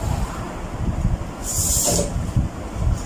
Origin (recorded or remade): recorded